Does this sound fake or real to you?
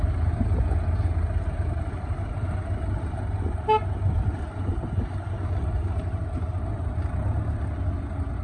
real